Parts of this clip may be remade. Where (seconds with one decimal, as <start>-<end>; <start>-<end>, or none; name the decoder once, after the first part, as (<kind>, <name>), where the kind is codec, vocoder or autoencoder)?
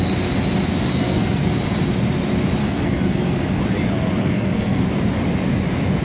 0.9-1.5 (codec, SNAC); 2.6-3.6; 4.2-4.8